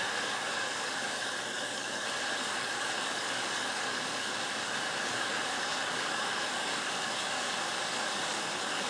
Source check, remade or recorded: remade